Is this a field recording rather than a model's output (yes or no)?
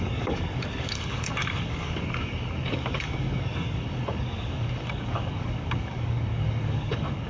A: no